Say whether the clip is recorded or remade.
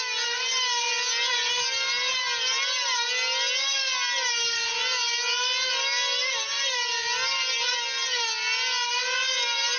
recorded